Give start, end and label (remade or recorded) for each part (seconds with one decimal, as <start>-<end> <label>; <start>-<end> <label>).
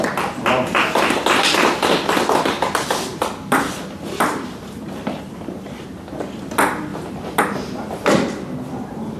0.0-3.1 recorded; 3.1-5.2 remade; 5.2-6.9 recorded; 6.9-7.4 remade; 7.4-9.2 recorded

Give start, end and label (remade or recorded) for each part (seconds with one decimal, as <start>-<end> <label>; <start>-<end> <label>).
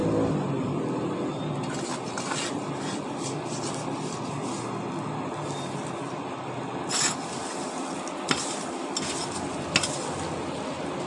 0.0-11.1 recorded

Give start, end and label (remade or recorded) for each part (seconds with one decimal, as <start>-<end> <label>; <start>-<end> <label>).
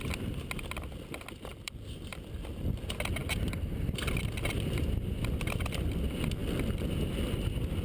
0.0-1.5 recorded; 1.5-2.3 remade; 2.3-3.2 recorded; 3.2-4.9 remade; 4.9-7.8 recorded